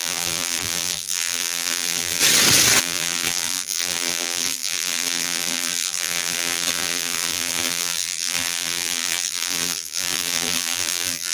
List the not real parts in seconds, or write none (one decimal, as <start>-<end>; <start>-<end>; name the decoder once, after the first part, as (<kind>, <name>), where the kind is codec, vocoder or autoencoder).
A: 0.0-2.2 (vocoder, BigVGAN v2); 2.8-11.3